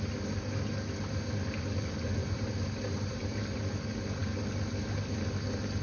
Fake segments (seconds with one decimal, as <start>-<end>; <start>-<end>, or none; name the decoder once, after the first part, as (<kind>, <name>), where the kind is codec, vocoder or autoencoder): 2.2-3.6 (vocoder, BigVGAN v2)